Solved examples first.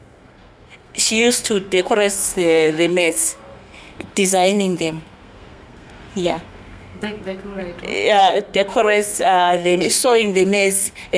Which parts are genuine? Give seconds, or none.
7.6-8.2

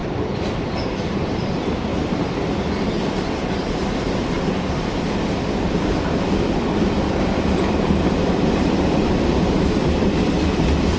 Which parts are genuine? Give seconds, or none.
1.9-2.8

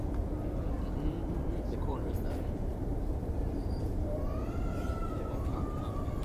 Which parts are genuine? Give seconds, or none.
0.0-1.9; 5.6-6.2

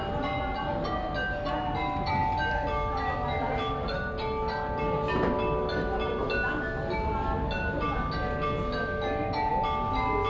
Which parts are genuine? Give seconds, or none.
0.0-10.3